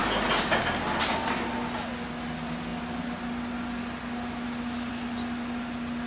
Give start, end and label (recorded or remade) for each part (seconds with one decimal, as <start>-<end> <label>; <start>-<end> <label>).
0.0-6.1 recorded